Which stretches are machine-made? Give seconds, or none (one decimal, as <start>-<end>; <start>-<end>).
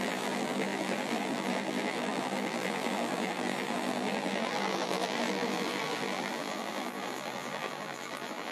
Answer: 0.0-8.5